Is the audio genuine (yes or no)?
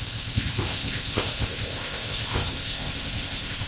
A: no